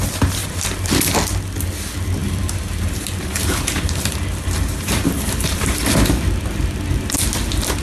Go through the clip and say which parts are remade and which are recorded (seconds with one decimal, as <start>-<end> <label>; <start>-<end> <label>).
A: 0.0-0.4 recorded; 0.4-1.1 remade; 1.1-2.2 recorded; 2.2-6.1 remade; 6.1-7.8 recorded